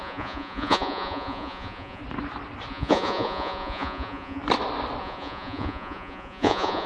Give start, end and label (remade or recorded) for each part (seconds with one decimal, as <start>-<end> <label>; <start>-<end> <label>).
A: 0.0-2.0 remade; 2.0-2.7 recorded; 2.7-4.4 remade; 4.4-5.0 recorded; 5.0-6.9 remade